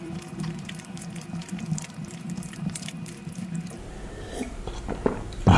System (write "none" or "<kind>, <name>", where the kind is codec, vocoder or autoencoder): vocoder, BigVGAN v2